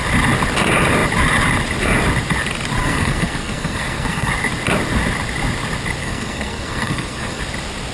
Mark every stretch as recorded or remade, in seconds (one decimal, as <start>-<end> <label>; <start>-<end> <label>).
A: 0.0-2.8 recorded; 2.8-4.3 remade; 4.3-6.0 recorded; 6.0-7.4 remade; 7.4-7.9 recorded